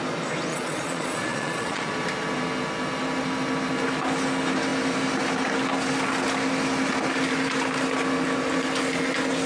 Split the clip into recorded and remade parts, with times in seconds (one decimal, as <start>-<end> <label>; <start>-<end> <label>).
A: 0.0-0.5 recorded; 0.5-1.9 remade; 1.9-9.5 recorded